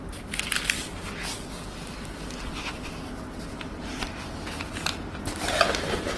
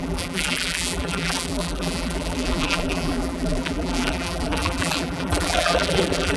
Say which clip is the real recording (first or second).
first